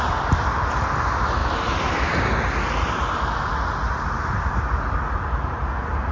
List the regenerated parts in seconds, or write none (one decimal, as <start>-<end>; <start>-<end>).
none